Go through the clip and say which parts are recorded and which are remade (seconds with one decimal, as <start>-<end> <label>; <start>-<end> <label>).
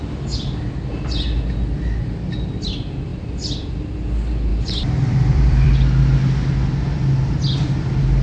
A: 0.0-3.1 recorded; 3.1-3.9 remade; 3.9-4.5 recorded; 4.5-5.7 remade; 5.7-8.2 recorded